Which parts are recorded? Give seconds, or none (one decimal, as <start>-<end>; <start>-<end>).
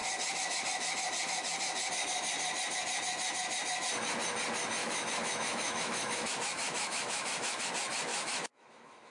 0.0-4.8; 7.6-8.1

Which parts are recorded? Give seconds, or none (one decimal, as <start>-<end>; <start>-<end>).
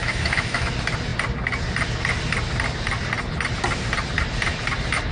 0.7-5.1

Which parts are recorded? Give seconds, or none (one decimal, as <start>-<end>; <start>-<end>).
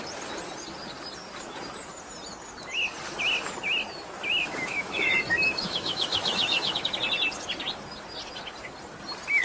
0.0-4.4; 6.9-9.4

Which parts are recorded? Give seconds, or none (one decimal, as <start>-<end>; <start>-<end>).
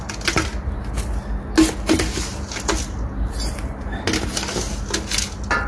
0.0-5.7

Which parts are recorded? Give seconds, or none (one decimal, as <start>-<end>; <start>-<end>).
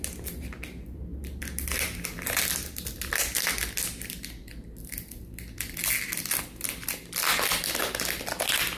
0.0-8.8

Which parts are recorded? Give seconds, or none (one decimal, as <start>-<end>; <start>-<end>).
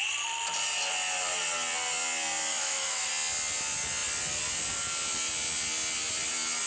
0.0-2.5; 3.1-6.7